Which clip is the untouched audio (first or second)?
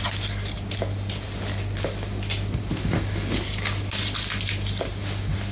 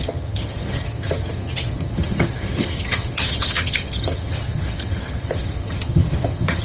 first